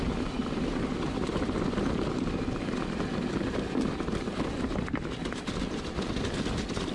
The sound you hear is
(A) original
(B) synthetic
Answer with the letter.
A